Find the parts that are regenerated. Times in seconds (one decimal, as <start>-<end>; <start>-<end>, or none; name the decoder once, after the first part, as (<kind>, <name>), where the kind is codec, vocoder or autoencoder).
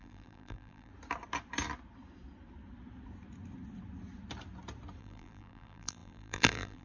0.0-0.9 (vocoder, BigVGAN v2); 5.0-6.8